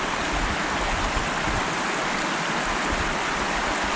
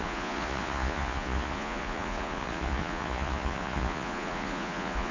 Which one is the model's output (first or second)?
second